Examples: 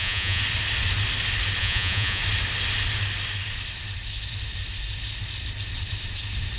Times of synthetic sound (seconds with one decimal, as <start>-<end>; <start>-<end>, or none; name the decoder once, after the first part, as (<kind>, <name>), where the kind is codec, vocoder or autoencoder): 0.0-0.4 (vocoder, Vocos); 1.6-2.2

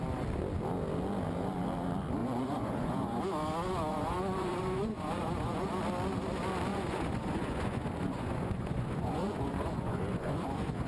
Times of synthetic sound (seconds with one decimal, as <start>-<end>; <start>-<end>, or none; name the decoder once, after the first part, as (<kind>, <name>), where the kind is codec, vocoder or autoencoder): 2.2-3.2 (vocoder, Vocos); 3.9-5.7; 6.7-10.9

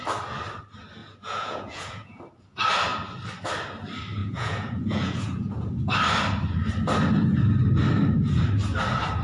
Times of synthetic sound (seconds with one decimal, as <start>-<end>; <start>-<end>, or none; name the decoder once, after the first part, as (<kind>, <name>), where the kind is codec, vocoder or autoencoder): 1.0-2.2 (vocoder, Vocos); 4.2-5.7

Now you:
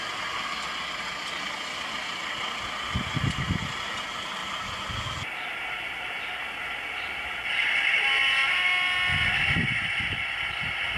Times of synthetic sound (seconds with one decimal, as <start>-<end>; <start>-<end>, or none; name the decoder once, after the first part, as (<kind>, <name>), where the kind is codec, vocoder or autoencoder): none

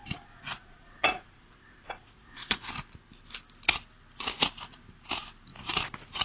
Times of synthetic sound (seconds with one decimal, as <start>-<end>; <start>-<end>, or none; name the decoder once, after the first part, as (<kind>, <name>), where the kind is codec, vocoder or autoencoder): 0.0-2.7 (vocoder, Vocos)

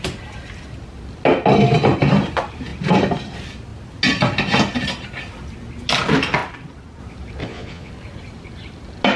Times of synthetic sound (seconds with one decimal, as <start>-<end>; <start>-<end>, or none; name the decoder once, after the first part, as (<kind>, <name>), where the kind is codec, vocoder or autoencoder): 7.4-7.9 (vocoder, Vocos)

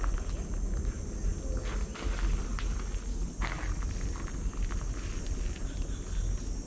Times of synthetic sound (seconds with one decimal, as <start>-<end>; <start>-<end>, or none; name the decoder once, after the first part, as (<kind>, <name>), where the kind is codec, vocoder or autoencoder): none